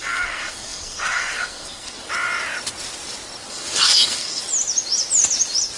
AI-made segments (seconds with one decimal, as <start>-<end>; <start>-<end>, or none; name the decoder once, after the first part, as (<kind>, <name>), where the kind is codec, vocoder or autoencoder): 0.0-2.0 (codec, SNAC); 3.5-4.4